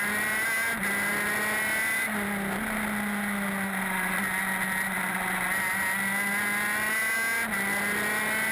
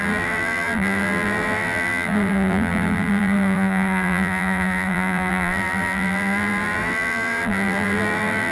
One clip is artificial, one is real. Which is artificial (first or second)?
second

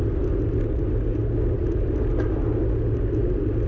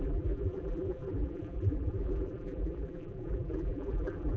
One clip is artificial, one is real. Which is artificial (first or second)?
second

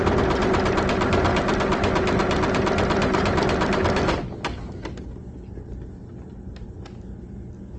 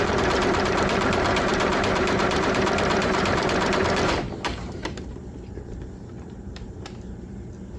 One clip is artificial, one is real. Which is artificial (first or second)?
second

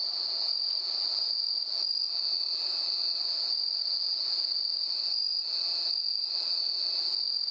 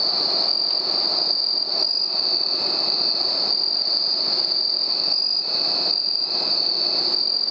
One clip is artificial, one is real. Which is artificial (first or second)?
first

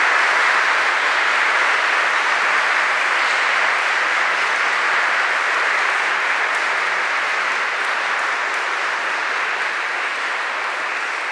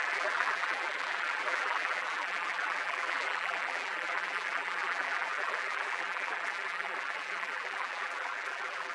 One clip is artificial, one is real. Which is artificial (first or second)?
second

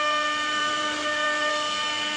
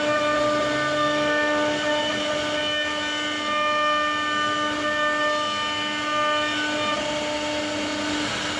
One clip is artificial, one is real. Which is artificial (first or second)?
first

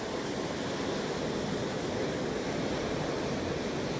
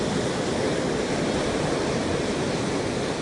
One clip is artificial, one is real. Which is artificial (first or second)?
second